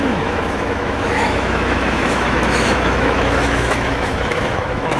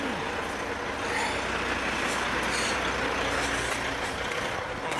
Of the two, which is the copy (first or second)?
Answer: first